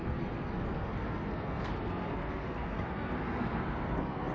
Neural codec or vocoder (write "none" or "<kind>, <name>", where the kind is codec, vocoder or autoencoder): codec, SNAC